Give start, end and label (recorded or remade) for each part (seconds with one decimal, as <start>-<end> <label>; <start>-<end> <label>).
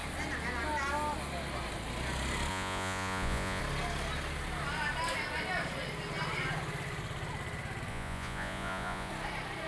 0.0-2.5 recorded; 2.5-3.6 remade; 3.6-7.9 recorded; 7.9-9.1 remade; 9.1-9.7 recorded